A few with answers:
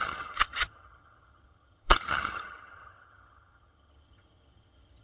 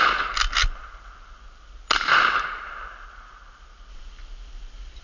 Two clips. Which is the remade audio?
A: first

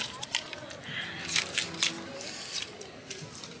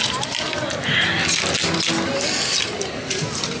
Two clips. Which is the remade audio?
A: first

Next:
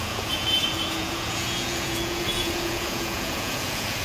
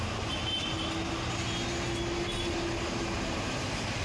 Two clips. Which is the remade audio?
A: first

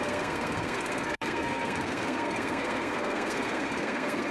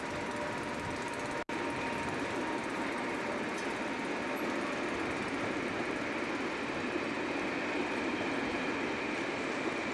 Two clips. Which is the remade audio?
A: first